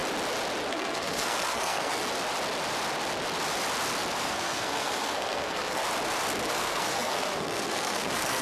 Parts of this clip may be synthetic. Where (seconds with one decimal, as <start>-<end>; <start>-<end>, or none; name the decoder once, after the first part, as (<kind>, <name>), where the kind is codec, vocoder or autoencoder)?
0.7-2.0 (codec, SNAC); 4.2-5.8; 6.5-8.4